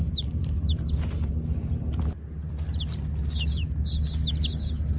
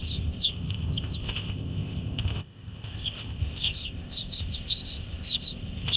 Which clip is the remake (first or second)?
second